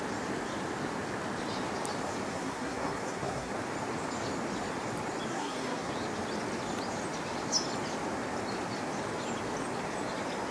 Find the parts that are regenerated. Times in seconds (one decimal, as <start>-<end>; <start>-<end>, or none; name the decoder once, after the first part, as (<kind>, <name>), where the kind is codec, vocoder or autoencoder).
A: 2.3-3.5 (codec, SNAC); 5.3-5.9

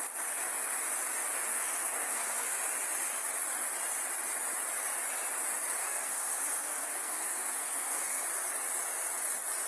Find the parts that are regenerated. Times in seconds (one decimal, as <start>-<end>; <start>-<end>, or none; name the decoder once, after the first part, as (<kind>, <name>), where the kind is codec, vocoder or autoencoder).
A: 1.5-2.6 (codec, SNAC); 5.8-8.2

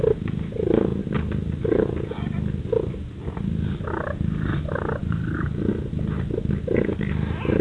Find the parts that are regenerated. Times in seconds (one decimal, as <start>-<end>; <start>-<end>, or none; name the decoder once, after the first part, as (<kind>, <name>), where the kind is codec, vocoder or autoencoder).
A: none

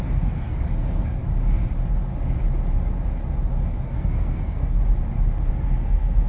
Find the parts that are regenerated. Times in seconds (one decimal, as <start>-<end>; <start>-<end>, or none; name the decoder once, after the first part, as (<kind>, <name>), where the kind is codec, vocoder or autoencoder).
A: 0.0-1.2 (codec, SNAC); 3.7-4.8; 5.5-6.3

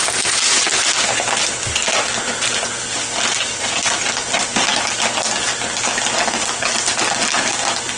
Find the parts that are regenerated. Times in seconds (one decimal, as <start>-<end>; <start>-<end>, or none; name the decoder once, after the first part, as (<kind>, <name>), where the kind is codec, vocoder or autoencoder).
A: none